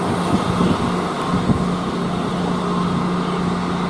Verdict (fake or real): real